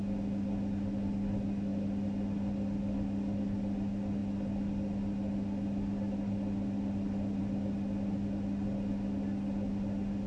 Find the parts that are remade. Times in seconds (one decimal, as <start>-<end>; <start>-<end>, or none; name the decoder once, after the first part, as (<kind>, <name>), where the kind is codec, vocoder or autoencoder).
none